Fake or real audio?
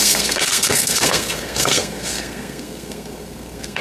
fake